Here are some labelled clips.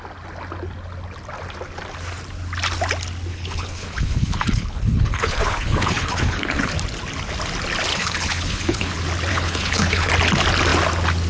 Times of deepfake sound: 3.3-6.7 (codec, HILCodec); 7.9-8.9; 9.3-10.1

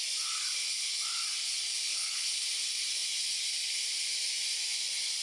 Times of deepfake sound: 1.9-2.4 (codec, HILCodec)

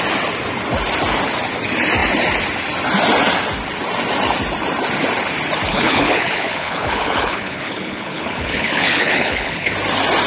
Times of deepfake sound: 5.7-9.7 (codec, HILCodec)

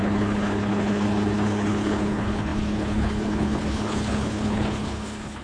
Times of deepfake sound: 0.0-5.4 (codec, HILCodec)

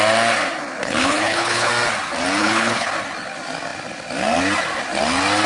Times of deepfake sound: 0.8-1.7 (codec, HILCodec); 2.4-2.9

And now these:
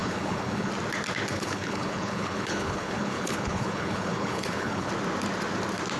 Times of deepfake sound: 0.0-0.7 (codec, HILCodec); 1.3-4.9